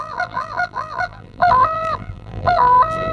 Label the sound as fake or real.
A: fake